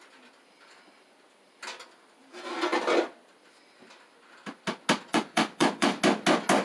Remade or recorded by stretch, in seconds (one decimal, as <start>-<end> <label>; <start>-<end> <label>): 0.0-5.1 recorded; 5.1-5.9 remade; 5.9-6.6 recorded